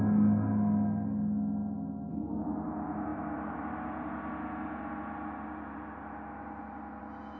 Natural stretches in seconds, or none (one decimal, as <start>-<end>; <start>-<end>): 0.0-7.4